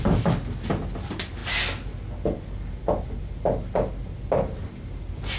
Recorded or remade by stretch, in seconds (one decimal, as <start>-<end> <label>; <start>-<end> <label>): 0.0-5.4 recorded